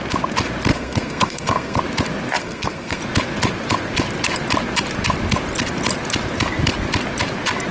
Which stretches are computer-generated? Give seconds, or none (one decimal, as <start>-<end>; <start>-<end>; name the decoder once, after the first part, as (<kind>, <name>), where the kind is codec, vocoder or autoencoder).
0.7-1.8 (codec, SNAC); 2.4-3.0